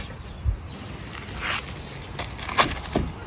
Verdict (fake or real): real